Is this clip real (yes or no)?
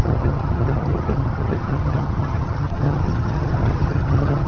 no